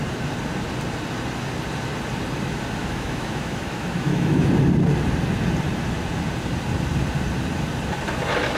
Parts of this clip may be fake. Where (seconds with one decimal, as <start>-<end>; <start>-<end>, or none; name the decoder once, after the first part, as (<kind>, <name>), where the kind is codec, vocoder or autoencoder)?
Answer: 2.8-4.5 (autoencoder, DAC-VAE)